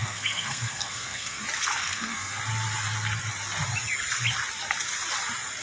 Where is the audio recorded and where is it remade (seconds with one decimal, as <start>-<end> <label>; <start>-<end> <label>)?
0.0-1.4 remade; 1.4-1.8 recorded; 1.8-2.4 remade; 2.4-5.6 recorded